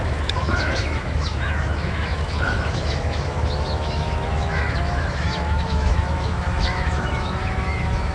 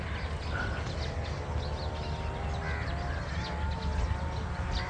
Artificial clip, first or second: first